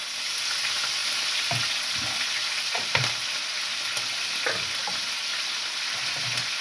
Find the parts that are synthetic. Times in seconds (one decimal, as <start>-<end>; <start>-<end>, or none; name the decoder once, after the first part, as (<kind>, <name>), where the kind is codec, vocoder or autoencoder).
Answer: none